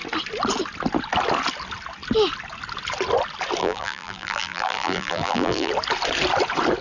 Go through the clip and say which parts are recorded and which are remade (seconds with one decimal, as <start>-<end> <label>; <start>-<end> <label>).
0.0-3.6 recorded; 3.6-5.7 remade; 5.7-6.8 recorded